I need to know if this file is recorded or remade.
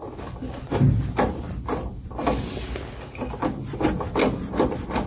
recorded